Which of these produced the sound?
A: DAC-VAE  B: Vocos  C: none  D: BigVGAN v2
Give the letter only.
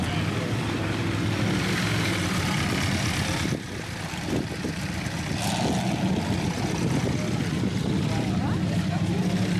C